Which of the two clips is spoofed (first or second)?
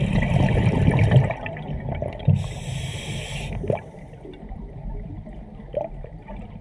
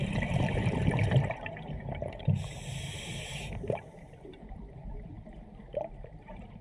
second